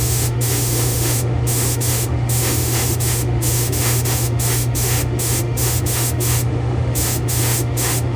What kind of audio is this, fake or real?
fake